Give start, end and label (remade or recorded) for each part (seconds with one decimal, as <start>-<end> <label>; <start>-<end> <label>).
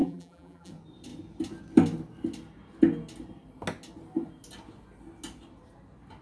0.0-0.7 remade; 0.7-6.2 recorded